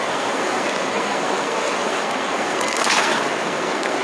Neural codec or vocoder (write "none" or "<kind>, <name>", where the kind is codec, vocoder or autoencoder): codec, SNAC